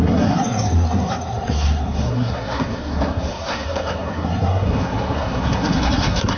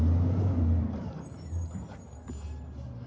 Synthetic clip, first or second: first